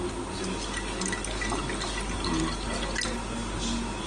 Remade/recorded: recorded